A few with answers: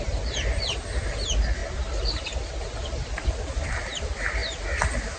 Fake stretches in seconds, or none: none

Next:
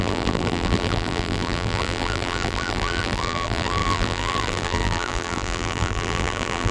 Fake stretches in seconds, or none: 0.0-6.7 (vocoder, BigVGAN v2)

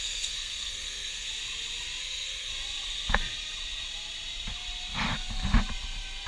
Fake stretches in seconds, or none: 0.0-1.3 (codec, SNAC); 2.0-2.5

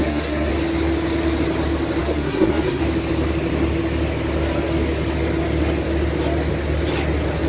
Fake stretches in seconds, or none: 0.0-0.5 (codec, SNAC); 2.0-2.8

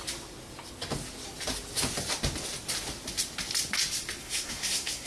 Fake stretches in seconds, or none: 4.2-5.1 (codec, SNAC)

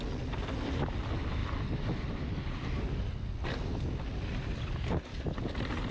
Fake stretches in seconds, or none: 1.4-3.3 (vocoder, BigVGAN v2)

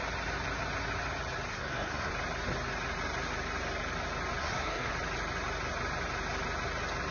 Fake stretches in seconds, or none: 1.5-2.1 (codec, SNAC); 4.4-4.9